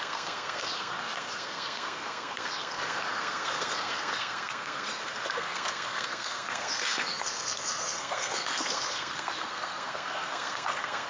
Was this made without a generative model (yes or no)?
no